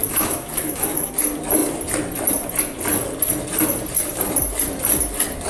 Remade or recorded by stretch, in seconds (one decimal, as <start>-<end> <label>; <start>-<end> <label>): 0.0-1.1 remade; 1.1-5.5 recorded